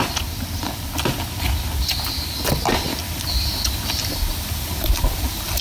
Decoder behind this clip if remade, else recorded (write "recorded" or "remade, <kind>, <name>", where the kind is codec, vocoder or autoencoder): recorded